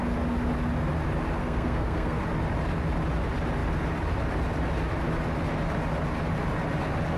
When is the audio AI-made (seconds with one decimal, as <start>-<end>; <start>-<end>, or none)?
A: 1.4-2.2